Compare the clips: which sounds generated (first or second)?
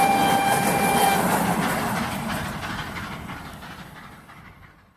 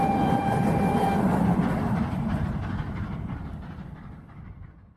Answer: second